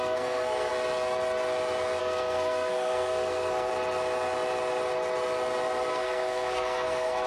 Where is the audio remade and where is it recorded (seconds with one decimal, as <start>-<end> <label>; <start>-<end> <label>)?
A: 0.0-0.7 remade; 0.7-2.0 recorded; 2.0-3.7 remade; 3.7-5.9 recorded; 5.9-7.3 remade